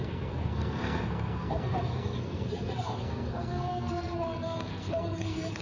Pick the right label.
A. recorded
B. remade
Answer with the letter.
B